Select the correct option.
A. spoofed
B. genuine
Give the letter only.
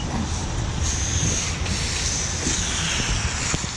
B